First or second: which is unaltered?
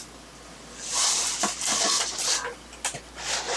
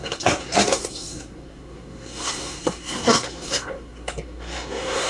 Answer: first